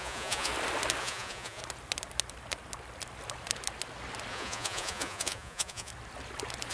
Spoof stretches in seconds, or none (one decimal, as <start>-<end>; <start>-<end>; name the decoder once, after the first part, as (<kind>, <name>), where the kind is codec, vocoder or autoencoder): 0.0-0.5 (vocoder, Vocos); 1.0-1.6; 4.3-5.9